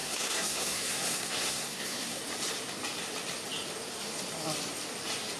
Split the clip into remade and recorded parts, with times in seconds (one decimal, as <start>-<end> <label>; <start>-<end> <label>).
0.0-2.2 remade; 2.2-5.4 recorded